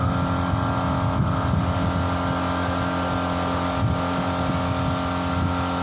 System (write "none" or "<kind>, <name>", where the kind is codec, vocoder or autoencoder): none